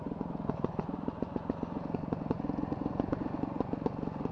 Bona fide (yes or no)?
no